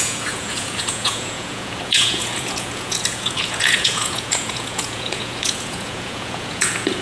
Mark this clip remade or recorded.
remade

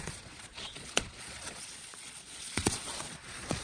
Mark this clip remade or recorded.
remade